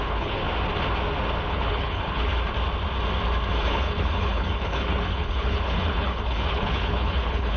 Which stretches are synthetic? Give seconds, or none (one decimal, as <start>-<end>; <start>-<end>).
0.0-0.4; 1.5-2.3; 3.7-7.6